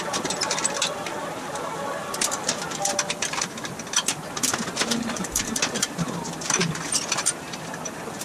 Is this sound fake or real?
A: fake